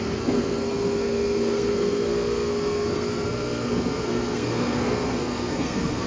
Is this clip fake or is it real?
fake